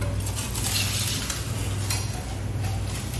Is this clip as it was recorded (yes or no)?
yes